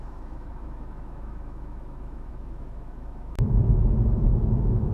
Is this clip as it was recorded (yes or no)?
no